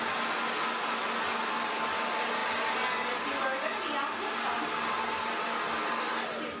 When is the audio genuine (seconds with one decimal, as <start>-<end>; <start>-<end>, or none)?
0.0-6.6

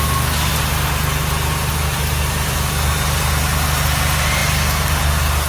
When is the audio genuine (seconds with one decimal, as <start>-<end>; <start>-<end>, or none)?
0.0-5.5

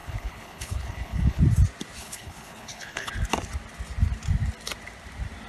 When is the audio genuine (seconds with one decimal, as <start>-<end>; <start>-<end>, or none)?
1.4-2.0; 3.1-5.5

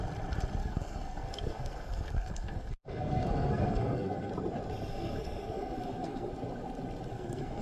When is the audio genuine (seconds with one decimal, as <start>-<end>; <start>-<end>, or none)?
0.0-0.6; 4.3-4.9; 6.3-7.1

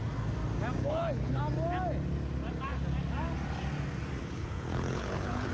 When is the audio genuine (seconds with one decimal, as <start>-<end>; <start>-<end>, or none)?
0.0-0.8; 1.4-4.2

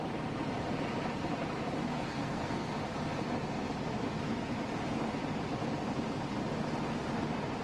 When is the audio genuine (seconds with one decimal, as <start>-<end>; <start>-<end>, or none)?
0.0-1.9; 2.7-7.6